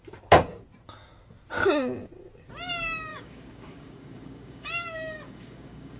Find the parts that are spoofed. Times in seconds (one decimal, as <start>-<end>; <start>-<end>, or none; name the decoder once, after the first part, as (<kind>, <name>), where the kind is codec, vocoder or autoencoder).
3.1-6.0 (codec, DAC)